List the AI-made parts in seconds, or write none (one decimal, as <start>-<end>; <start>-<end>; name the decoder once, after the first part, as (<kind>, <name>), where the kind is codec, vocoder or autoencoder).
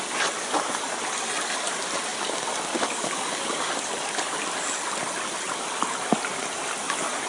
none